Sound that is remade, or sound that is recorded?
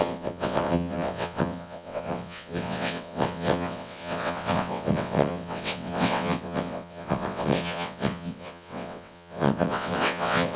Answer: remade